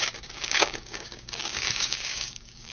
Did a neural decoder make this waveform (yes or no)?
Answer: yes